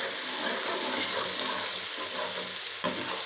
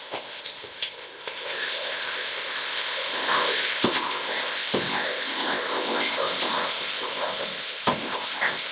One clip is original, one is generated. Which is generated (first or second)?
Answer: second